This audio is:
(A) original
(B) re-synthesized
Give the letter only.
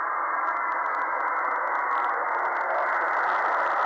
A